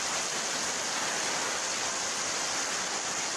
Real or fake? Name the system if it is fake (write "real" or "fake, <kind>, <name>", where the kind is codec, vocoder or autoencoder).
real